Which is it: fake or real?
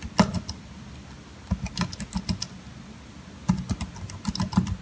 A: real